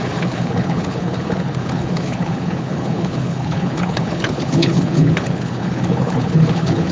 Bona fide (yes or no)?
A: no